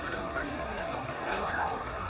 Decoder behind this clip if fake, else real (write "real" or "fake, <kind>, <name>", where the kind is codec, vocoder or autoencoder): fake, codec, SNAC